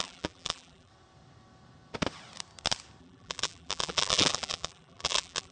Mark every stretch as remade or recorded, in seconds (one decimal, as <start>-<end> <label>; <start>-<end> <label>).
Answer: 0.0-0.9 remade; 0.9-3.0 recorded; 3.0-5.5 remade